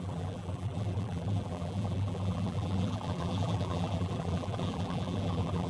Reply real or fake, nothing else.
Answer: fake